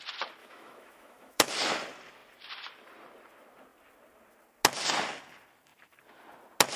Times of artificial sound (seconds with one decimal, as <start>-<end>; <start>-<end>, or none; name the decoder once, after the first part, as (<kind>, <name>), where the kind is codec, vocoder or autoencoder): 0.4-1.5 (autoencoder, DAC-VAE)